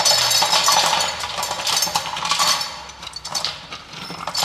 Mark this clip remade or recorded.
remade